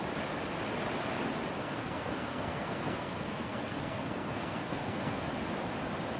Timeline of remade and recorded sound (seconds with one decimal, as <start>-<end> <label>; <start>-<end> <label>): 0.0-1.6 recorded; 1.6-5.3 remade; 5.3-6.2 recorded